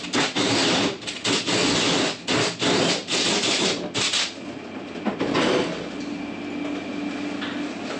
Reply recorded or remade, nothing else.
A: recorded